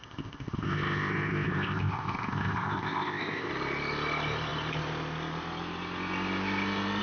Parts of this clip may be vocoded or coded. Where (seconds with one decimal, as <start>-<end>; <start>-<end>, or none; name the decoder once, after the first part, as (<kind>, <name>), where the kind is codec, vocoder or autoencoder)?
0.0-3.5 (codec, ZipCodec)